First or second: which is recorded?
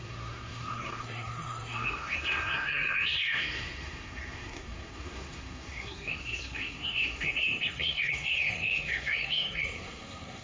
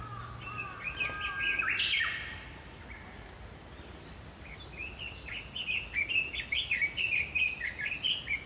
second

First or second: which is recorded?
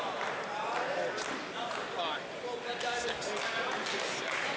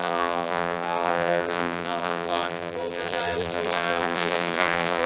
first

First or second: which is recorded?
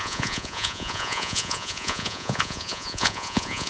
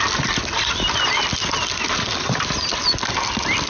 second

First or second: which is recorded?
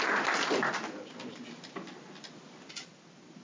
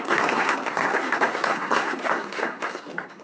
first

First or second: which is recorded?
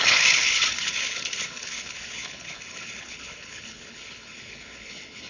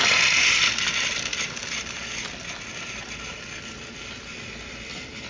second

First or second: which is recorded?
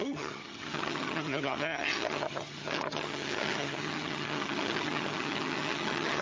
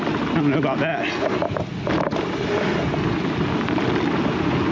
second